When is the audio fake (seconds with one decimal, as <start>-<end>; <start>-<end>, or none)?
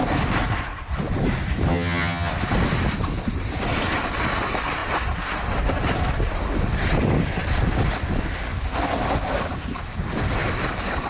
1.7-2.3